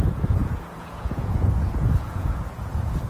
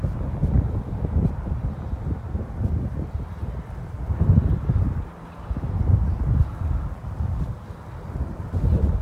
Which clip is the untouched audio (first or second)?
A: second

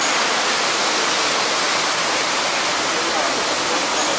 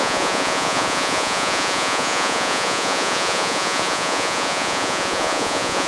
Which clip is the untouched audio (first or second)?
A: first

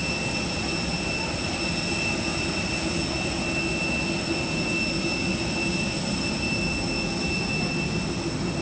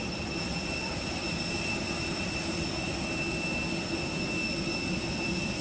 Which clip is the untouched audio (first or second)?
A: first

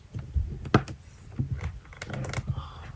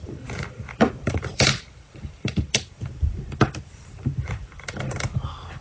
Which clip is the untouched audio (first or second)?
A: first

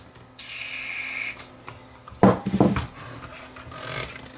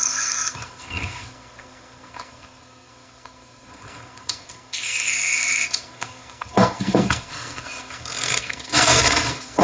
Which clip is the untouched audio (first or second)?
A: first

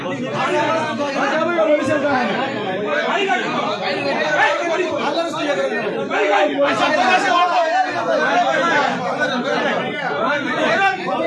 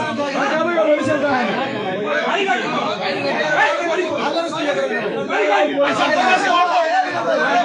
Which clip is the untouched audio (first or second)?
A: first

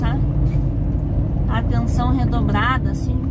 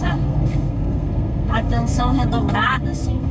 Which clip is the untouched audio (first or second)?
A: first